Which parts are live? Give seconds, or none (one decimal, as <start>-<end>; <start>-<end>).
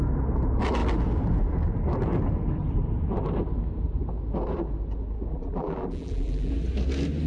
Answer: 0.0-5.3; 6.5-7.3